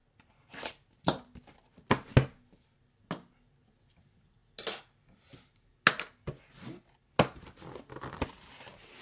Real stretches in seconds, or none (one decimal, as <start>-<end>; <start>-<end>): 0.0-9.0